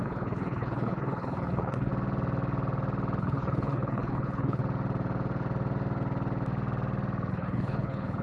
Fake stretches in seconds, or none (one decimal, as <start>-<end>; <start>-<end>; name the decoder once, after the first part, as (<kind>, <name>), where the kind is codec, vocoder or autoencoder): 0.0-1.9 (codec, HILCodec); 3.2-4.6; 7.3-8.2